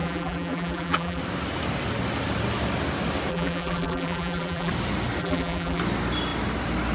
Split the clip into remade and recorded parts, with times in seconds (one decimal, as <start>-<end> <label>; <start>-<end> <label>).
0.0-1.2 remade; 1.2-3.3 recorded; 3.3-4.7 remade; 4.7-5.2 recorded; 5.2-5.8 remade; 5.8-6.9 recorded

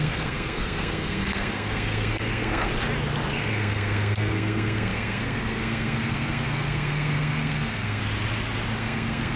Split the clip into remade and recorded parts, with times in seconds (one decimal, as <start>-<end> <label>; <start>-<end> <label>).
0.0-2.7 remade; 2.7-3.3 recorded; 3.3-8.0 remade; 8.0-8.8 recorded; 8.8-9.4 remade